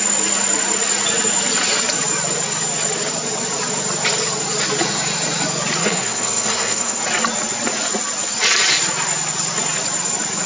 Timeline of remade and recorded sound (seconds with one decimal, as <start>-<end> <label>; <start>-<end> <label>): 0.0-5.8 recorded; 5.8-7.0 remade; 7.0-10.5 recorded